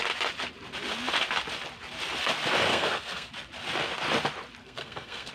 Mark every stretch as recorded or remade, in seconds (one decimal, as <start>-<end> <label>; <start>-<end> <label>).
0.0-2.7 recorded; 2.7-3.3 remade; 3.3-4.6 recorded; 4.6-5.3 remade